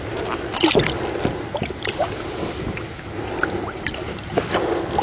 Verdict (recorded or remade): recorded